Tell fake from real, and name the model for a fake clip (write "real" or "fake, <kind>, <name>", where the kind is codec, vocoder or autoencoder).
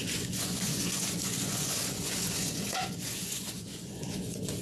fake, vocoder, Vocos